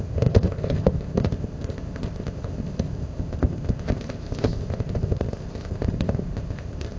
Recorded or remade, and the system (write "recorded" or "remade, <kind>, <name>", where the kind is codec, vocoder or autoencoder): remade, codec, ZipCodec